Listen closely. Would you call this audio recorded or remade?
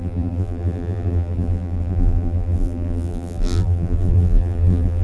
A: remade